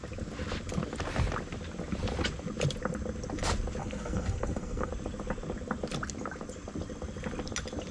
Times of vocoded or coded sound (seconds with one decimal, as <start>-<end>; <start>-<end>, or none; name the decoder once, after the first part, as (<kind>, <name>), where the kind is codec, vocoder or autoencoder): 3.8-4.9 (codec, SNAC)